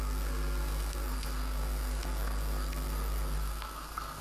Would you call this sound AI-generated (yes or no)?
yes